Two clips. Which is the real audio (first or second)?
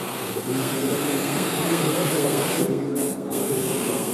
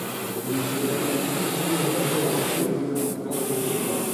second